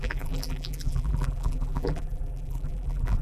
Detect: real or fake fake